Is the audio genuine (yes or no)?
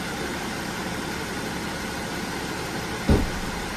yes